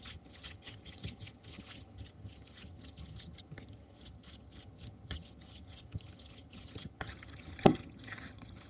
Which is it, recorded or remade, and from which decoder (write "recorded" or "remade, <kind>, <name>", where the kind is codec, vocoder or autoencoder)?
remade, vocoder, HiFi-GAN